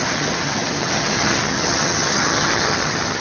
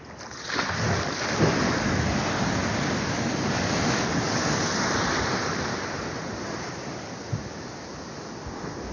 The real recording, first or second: second